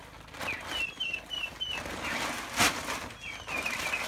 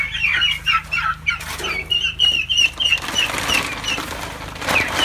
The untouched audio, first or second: first